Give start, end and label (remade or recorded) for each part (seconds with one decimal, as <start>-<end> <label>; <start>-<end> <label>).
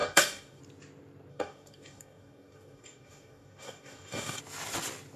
0.0-0.6 remade; 0.6-1.3 recorded; 1.3-4.4 remade; 4.4-5.2 recorded